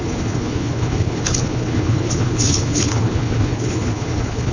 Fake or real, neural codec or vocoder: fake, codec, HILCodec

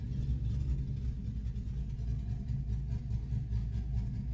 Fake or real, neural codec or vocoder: real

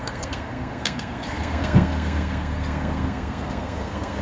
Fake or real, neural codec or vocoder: fake, codec, SNAC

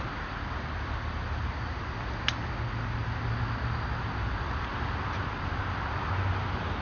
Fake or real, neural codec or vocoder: real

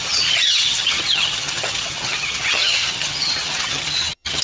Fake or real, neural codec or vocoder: fake, vocoder, HiFi-GAN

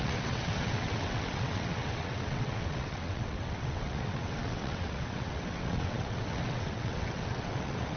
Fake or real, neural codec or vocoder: fake, vocoder, WaveNeXt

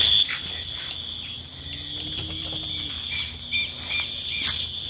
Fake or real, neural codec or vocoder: real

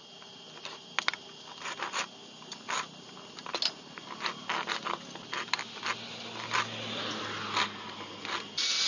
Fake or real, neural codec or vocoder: real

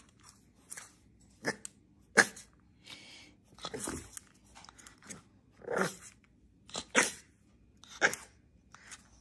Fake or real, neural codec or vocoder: real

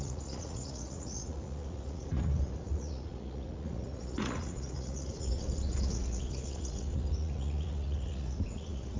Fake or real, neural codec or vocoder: fake, vocoder, Vocos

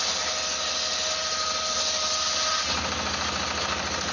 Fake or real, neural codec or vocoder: real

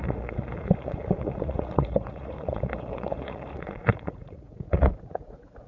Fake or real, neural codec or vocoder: fake, vocoder, Vocos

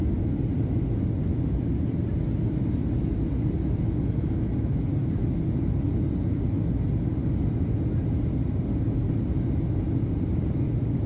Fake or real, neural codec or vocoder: real